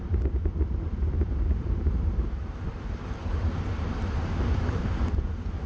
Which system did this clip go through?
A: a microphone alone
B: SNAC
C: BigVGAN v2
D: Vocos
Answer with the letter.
C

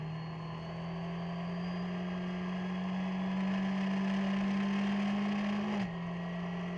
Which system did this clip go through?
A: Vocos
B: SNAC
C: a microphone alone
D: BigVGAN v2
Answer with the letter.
C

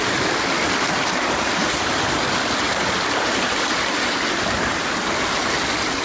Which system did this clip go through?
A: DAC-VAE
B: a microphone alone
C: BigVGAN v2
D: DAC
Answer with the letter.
B